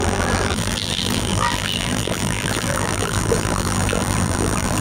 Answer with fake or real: fake